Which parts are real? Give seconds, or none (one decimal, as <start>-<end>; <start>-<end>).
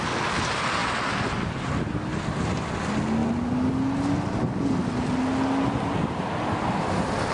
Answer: 0.0-7.3